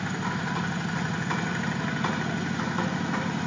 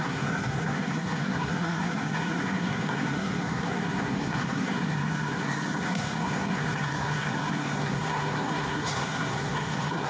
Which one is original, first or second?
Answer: first